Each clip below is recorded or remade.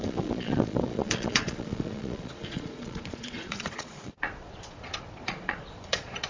remade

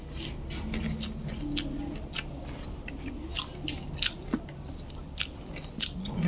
recorded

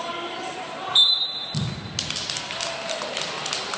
recorded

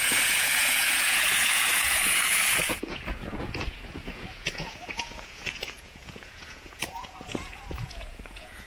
remade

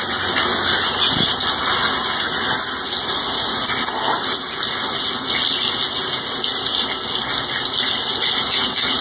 recorded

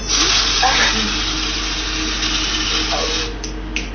recorded